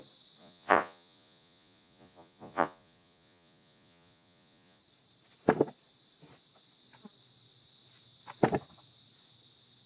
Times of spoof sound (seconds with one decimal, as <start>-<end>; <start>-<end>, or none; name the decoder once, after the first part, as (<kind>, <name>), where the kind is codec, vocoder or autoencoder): 0.4-4.8 (vocoder, Vocos)